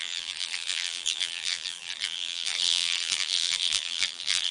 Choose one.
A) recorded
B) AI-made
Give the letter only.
B